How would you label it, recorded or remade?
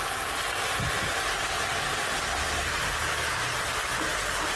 recorded